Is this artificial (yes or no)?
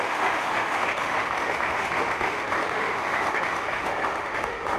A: yes